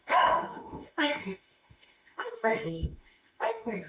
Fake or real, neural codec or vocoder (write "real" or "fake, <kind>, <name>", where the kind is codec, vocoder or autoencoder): fake, autoencoder, DAC-VAE